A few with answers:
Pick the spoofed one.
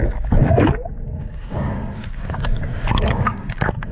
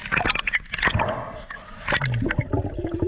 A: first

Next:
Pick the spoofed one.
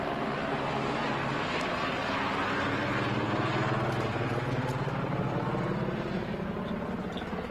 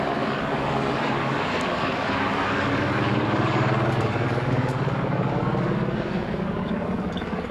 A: second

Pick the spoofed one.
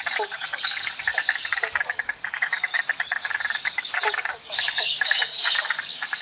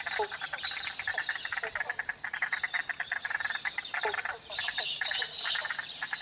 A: first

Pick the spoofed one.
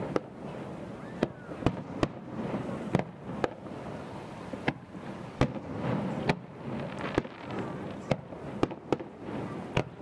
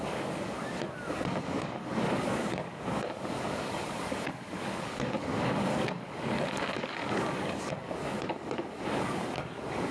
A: second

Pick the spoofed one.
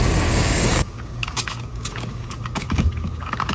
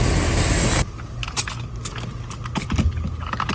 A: first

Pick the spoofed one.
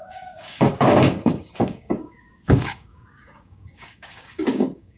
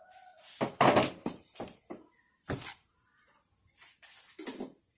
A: first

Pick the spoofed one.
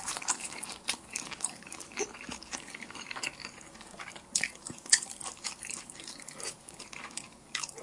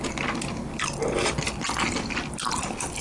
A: first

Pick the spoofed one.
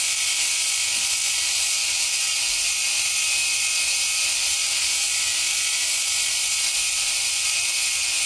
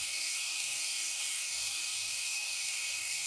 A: second